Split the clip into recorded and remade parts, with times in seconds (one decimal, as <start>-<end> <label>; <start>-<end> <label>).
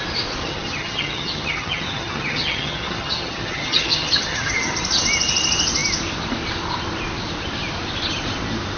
0.0-0.4 recorded; 0.4-4.8 remade; 4.8-8.8 recorded